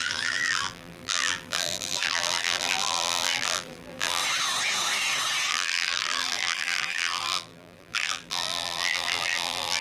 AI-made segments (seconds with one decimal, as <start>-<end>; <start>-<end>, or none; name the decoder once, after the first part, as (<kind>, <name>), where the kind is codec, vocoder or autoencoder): 0.0-4.2 (vocoder, BigVGAN v2); 5.5-9.8